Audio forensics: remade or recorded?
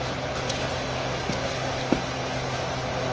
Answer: recorded